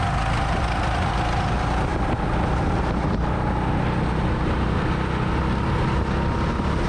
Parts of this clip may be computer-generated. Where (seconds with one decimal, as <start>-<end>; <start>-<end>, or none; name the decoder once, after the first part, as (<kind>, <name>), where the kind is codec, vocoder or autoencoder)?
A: none